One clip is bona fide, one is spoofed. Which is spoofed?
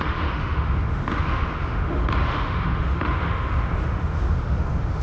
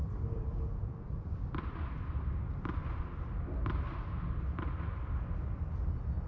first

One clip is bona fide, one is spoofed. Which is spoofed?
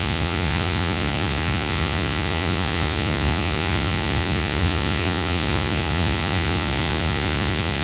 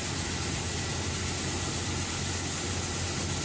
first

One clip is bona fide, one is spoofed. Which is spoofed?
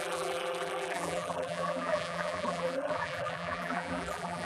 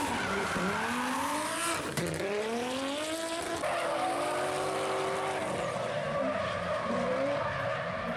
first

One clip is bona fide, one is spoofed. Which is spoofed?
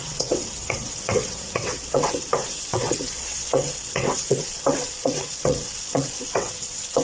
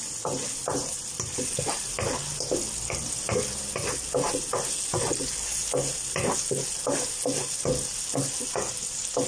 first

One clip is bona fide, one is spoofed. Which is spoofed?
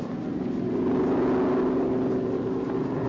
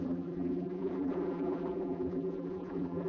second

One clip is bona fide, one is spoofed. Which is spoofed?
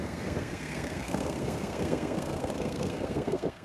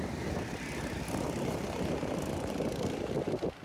first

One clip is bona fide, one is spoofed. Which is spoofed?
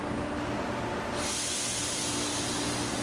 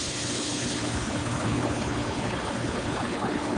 second